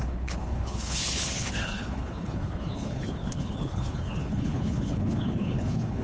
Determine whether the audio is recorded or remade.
remade